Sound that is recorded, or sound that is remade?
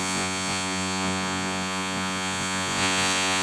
remade